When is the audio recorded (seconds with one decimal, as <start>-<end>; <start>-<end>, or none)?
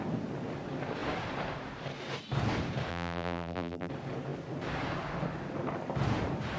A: 0.0-2.9; 3.9-6.6